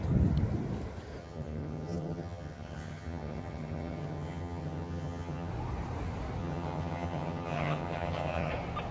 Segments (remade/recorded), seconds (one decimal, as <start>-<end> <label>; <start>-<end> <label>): 0.0-1.2 recorded; 1.2-5.5 remade; 5.5-6.4 recorded; 6.4-8.5 remade; 8.5-8.9 recorded